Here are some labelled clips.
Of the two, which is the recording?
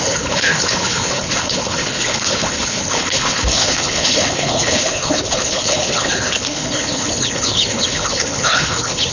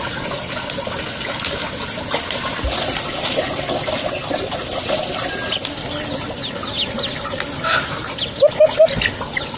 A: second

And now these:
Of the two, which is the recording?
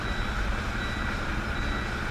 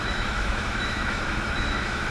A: first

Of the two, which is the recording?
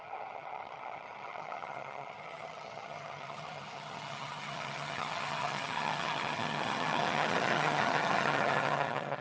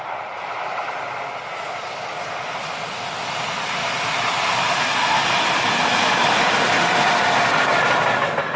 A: second